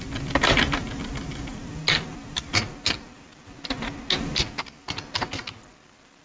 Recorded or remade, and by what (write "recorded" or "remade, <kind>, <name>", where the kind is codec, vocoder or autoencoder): recorded